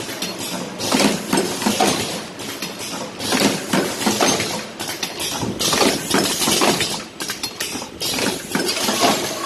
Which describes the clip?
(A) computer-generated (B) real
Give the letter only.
B